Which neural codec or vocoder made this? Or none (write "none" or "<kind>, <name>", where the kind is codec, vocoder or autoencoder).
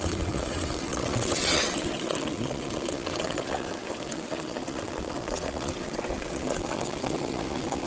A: vocoder, WaveNeXt